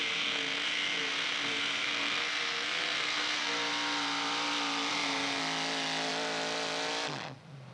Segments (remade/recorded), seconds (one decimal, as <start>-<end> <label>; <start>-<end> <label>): 0.0-3.5 remade; 3.5-4.9 recorded; 4.9-5.4 remade; 5.4-7.7 recorded